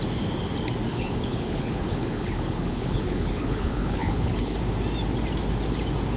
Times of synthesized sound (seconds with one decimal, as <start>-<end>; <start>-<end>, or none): 0.9-4.6